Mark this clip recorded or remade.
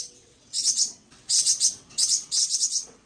remade